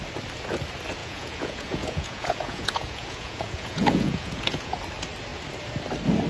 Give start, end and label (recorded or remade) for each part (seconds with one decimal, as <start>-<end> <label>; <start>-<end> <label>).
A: 0.0-1.0 recorded; 1.0-4.8 remade; 4.8-6.3 recorded